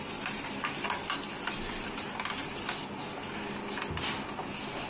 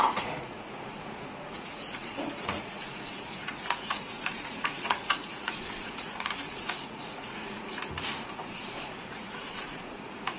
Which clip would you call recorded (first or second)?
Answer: first